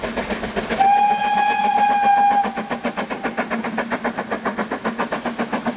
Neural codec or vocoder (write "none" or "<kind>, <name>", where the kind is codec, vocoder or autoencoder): none